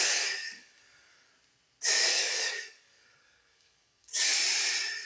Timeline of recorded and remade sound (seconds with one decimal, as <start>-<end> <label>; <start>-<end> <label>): 0.0-1.3 remade; 1.3-1.9 recorded; 1.9-4.1 remade; 4.1-5.1 recorded

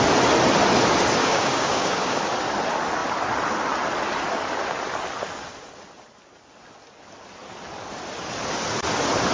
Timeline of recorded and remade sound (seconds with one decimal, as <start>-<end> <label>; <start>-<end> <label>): 0.0-1.2 recorded; 1.2-2.2 remade; 2.2-9.3 recorded

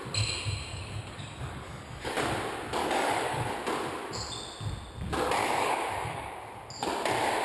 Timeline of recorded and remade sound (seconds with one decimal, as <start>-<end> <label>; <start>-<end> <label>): 0.0-0.7 recorded; 0.7-2.2 remade; 2.2-2.8 recorded; 2.8-3.5 remade; 3.5-5.4 recorded; 5.4-6.3 remade; 6.3-7.4 recorded

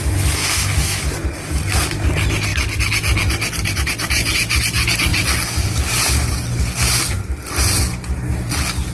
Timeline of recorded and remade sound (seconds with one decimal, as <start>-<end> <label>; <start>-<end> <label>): 0.0-0.4 recorded; 0.4-1.0 remade; 1.0-8.9 recorded

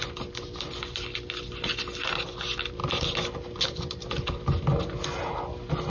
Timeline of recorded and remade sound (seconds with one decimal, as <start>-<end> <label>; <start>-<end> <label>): 0.0-5.9 recorded

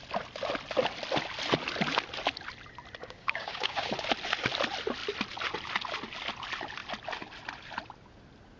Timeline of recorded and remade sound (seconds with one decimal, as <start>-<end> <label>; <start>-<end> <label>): 0.0-3.0 recorded; 3.0-3.9 remade; 3.9-8.6 recorded

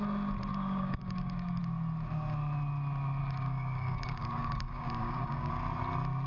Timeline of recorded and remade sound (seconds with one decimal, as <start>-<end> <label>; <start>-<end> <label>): 0.0-0.5 recorded; 0.5-1.6 remade; 1.6-3.2 recorded; 3.2-5.5 remade; 5.5-6.3 recorded

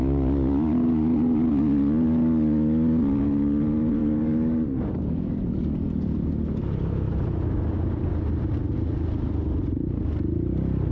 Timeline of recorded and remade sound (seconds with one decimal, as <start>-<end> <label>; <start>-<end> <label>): 0.0-4.0 recorded; 4.0-7.1 remade; 7.1-10.9 recorded